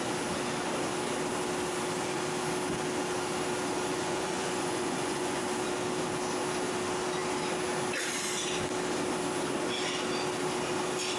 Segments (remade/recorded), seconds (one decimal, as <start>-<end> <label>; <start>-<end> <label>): 0.0-3.9 recorded; 3.9-5.4 remade; 5.4-11.2 recorded